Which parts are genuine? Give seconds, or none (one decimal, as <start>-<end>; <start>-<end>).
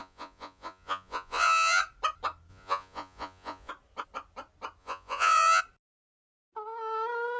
1.8-2.5; 3.7-4.8; 5.6-7.4